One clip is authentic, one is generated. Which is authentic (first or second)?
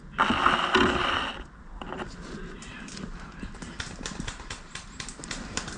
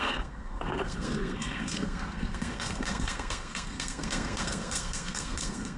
first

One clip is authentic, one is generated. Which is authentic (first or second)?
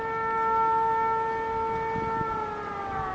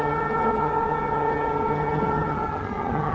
first